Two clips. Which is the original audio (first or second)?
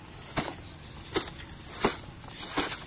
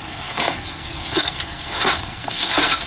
first